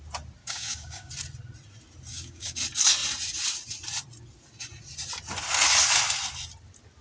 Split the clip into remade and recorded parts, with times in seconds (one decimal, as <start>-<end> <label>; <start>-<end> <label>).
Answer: 0.0-0.4 recorded; 0.4-1.1 remade; 1.1-2.1 recorded; 2.1-2.6 remade; 2.6-7.0 recorded